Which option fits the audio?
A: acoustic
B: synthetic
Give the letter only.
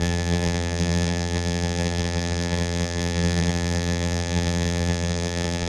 B